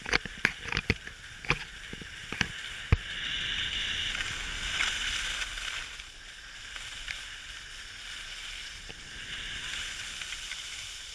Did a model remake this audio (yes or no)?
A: no